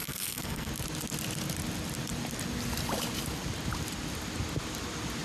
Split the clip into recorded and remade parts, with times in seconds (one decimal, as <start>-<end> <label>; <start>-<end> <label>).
0.0-0.7 remade; 0.7-5.2 recorded